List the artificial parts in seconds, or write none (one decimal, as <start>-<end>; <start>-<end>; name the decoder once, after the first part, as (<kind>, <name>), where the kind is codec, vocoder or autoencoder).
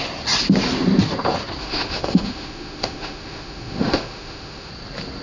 1.6-4.7 (autoencoder, DAC-VAE)